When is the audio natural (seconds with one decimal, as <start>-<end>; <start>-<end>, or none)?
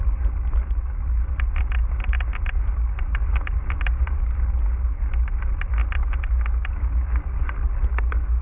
0.0-8.4